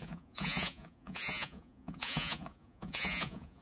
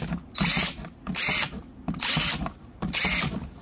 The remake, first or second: first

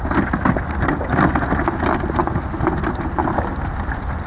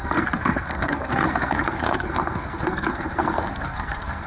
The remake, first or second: second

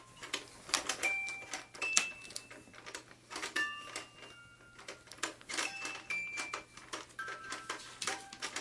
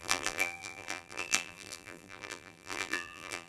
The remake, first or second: second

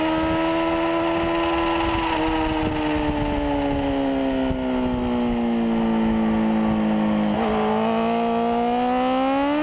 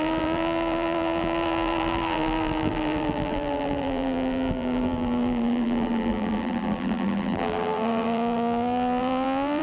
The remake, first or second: second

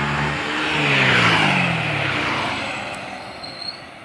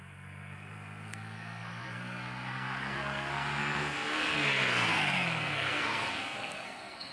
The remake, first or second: second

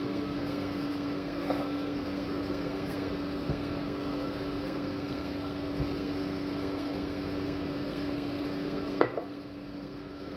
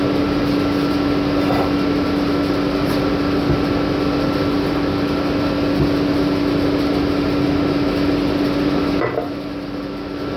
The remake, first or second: first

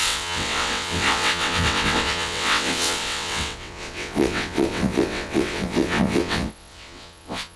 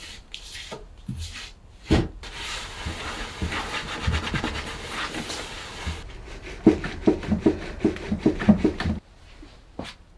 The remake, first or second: first